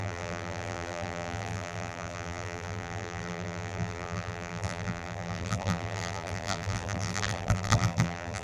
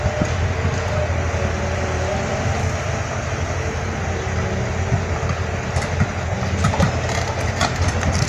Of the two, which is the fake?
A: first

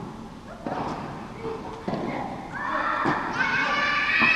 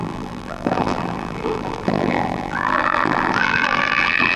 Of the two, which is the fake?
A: second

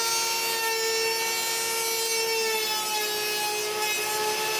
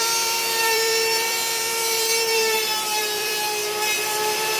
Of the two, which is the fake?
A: second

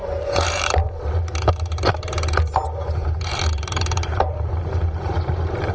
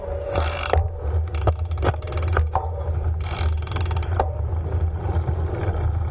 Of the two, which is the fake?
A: first